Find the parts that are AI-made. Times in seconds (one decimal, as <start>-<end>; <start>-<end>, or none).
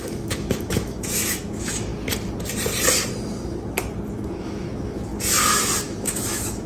0.0-1.9; 4.1-5.1; 5.8-6.7